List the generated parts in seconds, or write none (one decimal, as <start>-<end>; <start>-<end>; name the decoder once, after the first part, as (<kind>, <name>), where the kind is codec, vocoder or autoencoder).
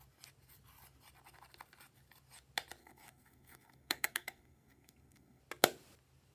2.8-5.4 (codec, SNAC)